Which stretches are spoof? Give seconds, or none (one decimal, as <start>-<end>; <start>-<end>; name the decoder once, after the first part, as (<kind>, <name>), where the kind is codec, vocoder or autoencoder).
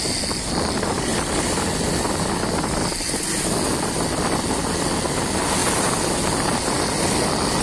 none